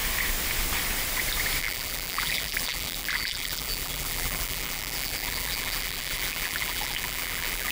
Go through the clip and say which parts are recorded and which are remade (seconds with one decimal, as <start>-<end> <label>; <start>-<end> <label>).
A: 0.0-1.6 recorded; 1.6-7.7 remade